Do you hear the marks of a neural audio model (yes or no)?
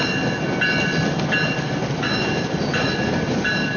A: no